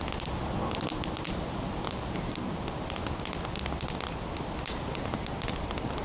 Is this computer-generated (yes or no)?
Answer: no